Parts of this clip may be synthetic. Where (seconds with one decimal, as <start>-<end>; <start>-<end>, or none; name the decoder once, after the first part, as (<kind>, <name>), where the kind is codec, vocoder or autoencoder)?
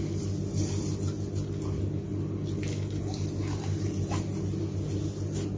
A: none